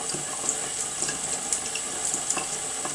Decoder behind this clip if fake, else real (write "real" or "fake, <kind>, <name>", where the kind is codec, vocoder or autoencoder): real